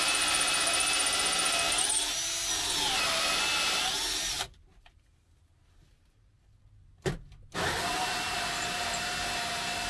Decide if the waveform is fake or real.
real